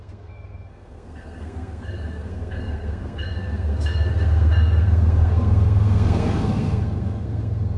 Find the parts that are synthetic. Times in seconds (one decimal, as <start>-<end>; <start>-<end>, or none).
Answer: 0.0-7.8

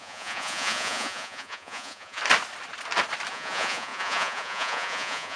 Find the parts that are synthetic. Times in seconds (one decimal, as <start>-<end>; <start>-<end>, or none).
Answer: 0.0-2.2; 3.3-5.4

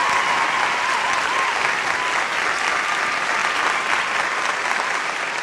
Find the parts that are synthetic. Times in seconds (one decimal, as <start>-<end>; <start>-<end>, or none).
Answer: none

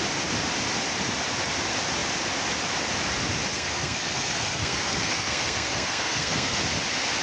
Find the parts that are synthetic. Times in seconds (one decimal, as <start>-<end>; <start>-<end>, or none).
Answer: 3.5-6.6

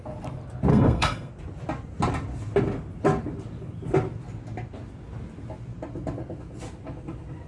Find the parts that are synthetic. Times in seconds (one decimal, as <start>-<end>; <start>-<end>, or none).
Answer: 0.7-1.3